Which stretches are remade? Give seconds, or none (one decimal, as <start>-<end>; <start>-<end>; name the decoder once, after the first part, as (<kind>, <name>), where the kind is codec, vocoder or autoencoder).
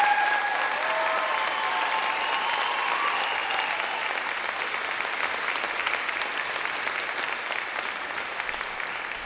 none